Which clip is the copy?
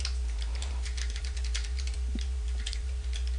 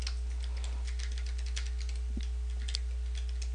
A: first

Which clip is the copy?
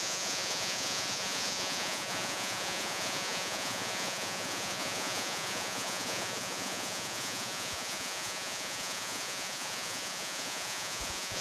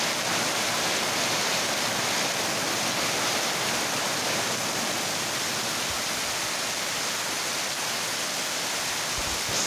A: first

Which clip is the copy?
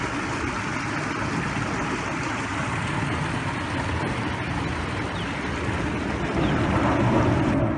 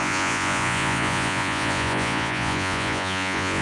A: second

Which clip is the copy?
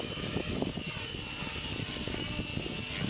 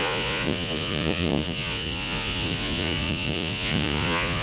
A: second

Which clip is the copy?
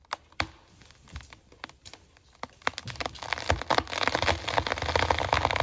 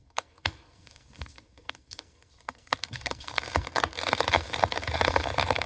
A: second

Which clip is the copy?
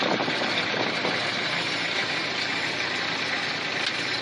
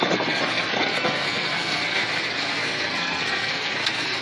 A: second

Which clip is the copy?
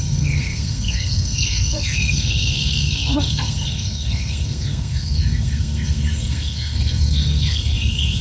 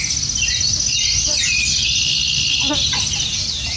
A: first